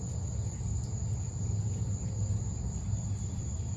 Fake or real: real